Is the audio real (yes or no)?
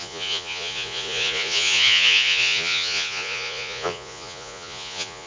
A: no